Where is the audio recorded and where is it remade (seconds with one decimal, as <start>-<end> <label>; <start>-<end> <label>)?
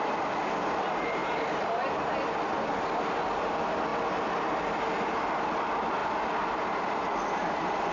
0.0-7.9 recorded